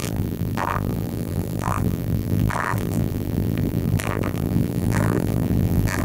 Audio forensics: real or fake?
fake